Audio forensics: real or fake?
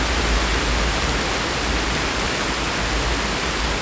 real